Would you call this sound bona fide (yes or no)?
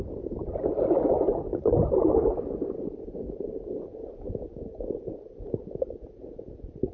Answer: yes